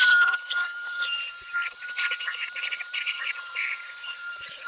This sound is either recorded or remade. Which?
remade